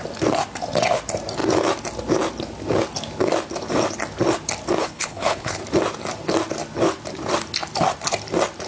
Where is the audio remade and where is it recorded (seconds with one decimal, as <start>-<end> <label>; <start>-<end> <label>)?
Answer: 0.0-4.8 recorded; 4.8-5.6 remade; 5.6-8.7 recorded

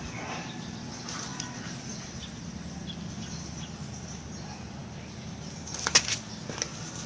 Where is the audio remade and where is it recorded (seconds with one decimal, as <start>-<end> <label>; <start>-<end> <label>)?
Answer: 0.0-7.1 recorded

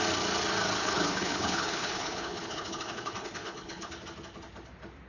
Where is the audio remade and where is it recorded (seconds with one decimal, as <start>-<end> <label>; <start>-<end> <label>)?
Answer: 0.0-0.8 recorded; 0.8-3.9 remade; 3.9-5.1 recorded

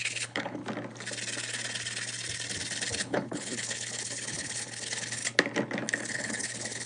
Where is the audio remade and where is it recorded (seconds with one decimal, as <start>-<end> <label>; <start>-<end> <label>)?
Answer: 0.0-0.6 remade; 0.6-3.0 recorded; 3.0-5.2 remade; 5.2-6.1 recorded; 6.1-6.9 remade

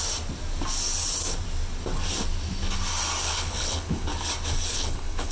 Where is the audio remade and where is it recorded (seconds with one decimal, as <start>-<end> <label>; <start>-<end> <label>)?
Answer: 0.0-3.2 recorded; 3.2-4.1 remade; 4.1-4.7 recorded; 4.7-5.3 remade